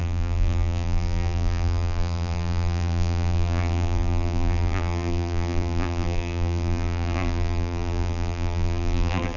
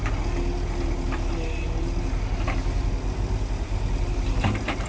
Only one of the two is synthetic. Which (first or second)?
first